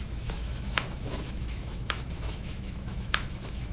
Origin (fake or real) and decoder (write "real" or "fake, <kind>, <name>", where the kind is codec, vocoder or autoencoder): fake, autoencoder, DAC-VAE